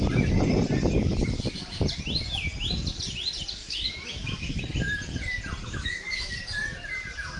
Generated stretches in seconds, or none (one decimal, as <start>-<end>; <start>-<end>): 3.6-4.6; 5.6-6.3